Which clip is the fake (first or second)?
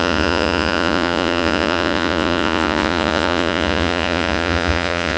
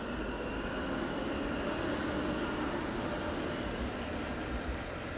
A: first